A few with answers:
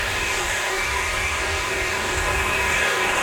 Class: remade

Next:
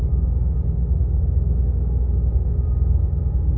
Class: remade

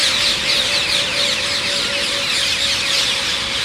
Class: recorded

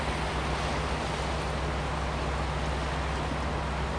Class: recorded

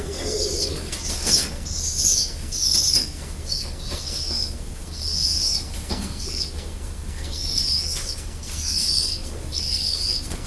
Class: remade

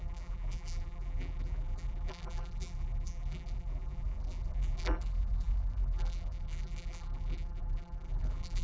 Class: remade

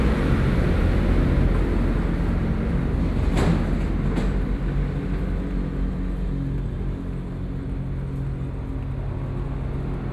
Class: recorded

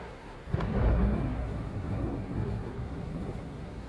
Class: remade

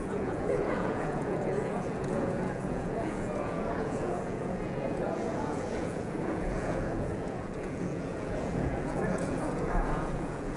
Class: remade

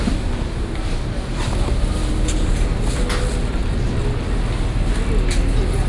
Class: recorded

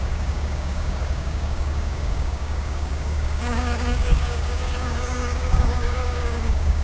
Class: remade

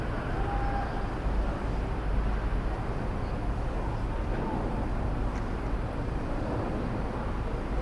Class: recorded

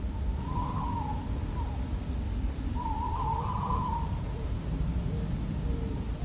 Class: recorded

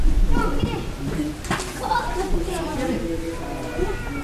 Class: recorded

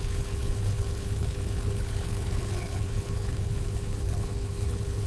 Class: remade